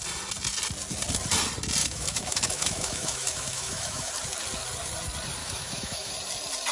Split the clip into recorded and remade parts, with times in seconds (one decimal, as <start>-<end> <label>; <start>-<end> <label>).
0.0-1.8 recorded; 1.8-4.1 remade; 4.1-5.4 recorded; 5.4-6.1 remade; 6.1-6.7 recorded